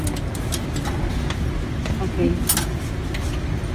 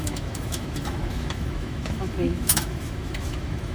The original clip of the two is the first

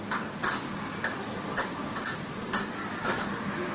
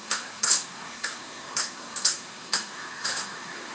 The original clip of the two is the first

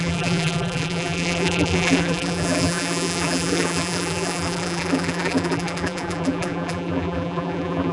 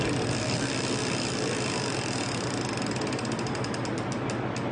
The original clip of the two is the second